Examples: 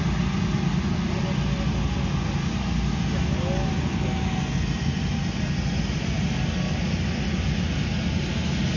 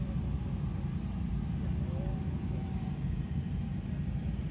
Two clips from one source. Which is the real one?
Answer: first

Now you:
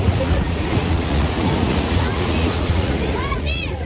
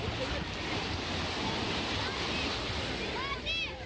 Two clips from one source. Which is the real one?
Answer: second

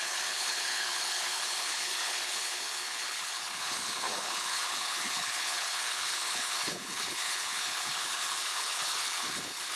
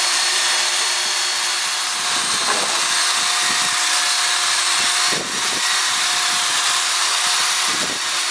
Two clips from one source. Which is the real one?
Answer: second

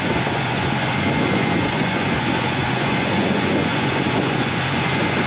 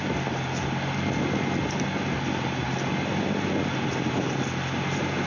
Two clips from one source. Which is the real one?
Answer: second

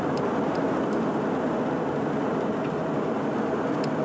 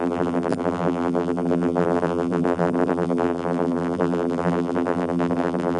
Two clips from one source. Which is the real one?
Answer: first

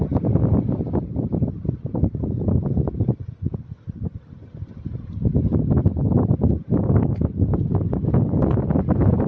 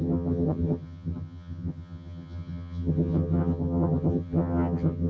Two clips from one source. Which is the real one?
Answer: first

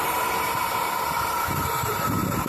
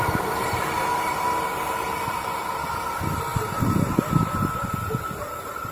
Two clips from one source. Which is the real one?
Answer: second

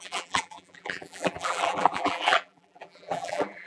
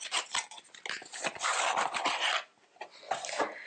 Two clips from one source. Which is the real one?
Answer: second